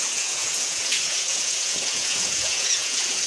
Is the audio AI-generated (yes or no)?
yes